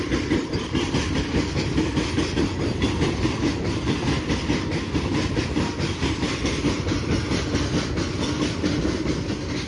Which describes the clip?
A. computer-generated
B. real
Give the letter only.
B